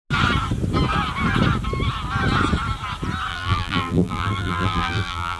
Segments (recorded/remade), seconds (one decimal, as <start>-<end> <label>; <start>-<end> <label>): 0.0-3.3 recorded; 3.3-5.4 remade